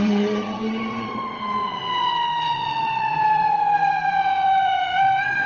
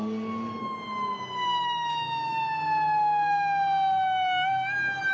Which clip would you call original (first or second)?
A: second